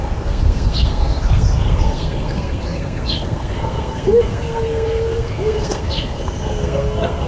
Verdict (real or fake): fake